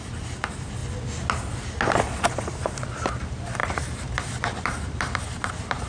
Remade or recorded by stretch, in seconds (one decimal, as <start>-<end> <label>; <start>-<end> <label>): 0.0-0.8 remade; 0.8-2.2 recorded; 2.2-5.9 remade